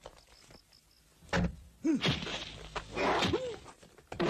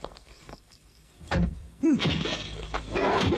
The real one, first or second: first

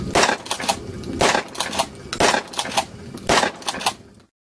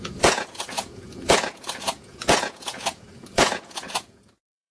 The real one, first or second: first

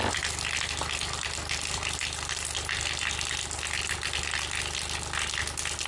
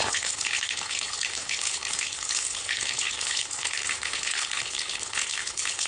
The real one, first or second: first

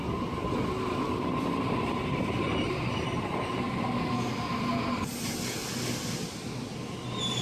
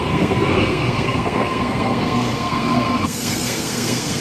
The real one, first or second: first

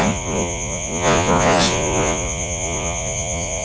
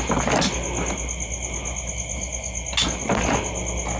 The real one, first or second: second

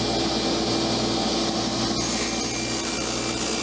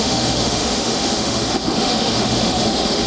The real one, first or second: first